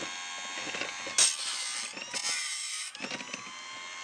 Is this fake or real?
real